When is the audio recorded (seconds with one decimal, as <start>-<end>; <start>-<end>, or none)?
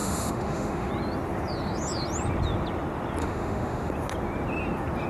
0.9-3.2; 3.9-5.1